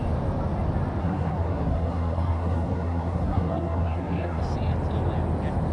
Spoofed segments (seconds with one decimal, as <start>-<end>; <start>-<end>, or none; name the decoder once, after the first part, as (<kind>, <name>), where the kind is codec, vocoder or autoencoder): 1.0-4.4 (codec, SNAC)

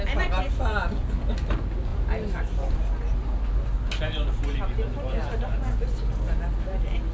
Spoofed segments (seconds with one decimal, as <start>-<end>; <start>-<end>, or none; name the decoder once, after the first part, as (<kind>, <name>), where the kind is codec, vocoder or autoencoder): none

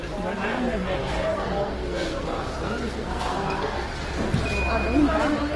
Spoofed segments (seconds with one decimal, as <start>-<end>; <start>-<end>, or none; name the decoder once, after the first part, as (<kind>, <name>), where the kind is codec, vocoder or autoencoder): 0.5-3.9 (codec, SNAC)

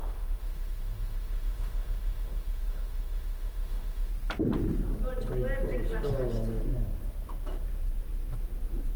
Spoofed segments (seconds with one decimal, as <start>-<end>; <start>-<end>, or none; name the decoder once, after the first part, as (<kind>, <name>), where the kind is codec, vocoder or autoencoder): 0.0-4.1 (autoencoder, DAC-VAE)

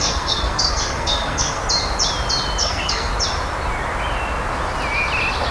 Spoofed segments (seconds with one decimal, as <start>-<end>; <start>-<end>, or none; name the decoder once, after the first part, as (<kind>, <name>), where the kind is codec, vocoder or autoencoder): 0.0-1.6 (codec, SNAC); 2.6-3.1

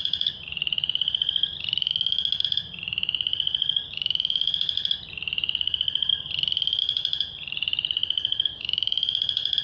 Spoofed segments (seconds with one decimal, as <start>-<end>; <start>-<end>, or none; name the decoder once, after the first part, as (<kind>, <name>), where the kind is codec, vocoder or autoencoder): 0.0-1.9 (vocoder, BigVGAN v2); 2.4-6.1; 6.8-9.6

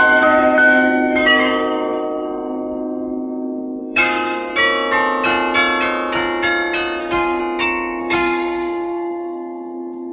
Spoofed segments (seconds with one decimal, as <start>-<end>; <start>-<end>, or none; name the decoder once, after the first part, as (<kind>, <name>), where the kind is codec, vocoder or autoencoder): 0.0-4.5 (codec, DAC); 7.0-7.4; 8.0-10.1

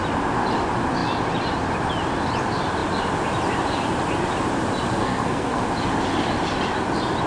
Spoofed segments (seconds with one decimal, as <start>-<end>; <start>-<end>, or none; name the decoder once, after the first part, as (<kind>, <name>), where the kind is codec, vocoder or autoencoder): 5.0-5.6 (codec, SNAC)